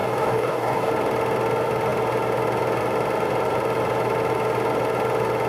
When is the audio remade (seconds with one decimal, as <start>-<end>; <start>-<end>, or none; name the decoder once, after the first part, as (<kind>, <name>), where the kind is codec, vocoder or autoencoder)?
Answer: 0.0-0.9 (codec, DAC)